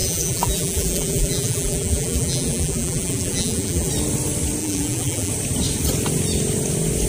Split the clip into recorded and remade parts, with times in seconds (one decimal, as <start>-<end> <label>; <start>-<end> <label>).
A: 0.0-3.9 remade; 3.9-4.6 recorded; 4.6-5.3 remade; 5.3-7.1 recorded